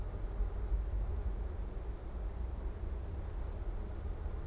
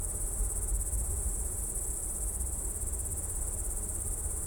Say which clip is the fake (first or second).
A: second